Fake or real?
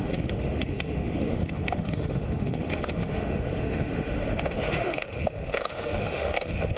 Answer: fake